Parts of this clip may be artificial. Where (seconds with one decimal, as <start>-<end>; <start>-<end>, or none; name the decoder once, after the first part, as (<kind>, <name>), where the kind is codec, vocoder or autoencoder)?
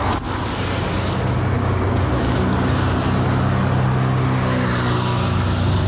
1.6-2.9 (codec, DAC)